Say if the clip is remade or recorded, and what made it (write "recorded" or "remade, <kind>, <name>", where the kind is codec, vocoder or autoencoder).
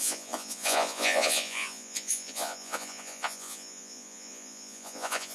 remade, vocoder, Vocos